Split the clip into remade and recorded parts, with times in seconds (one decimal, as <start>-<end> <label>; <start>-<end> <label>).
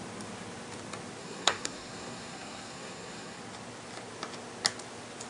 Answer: 0.0-1.2 recorded; 1.2-3.4 remade; 3.4-5.3 recorded